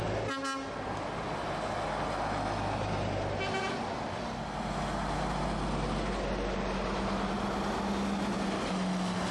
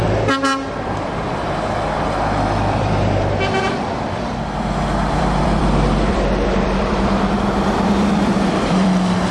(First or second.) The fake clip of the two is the second